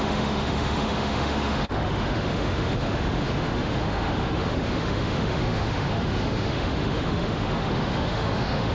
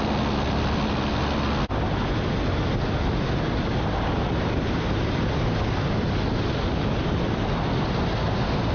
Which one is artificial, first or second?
first